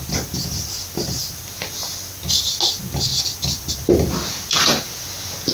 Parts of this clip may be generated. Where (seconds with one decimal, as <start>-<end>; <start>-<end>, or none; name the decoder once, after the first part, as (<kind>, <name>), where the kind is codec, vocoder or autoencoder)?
none